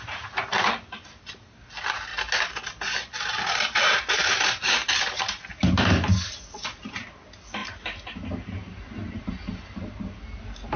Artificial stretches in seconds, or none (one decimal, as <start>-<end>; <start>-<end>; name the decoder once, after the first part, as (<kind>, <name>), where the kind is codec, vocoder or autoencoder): none